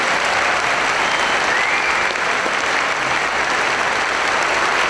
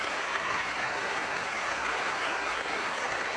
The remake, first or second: second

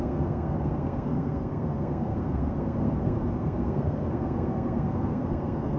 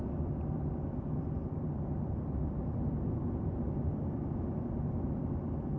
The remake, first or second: first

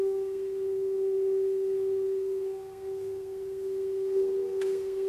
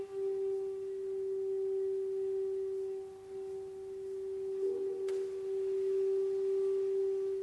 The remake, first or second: first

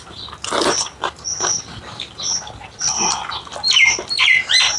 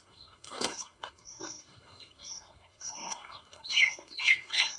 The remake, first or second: second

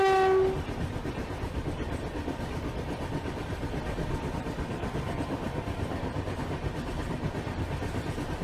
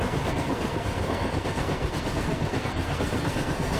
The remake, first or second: second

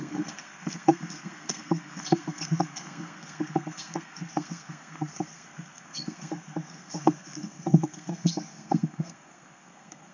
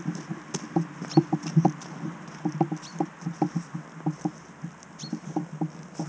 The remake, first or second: first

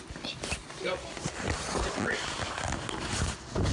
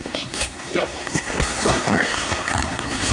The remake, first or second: second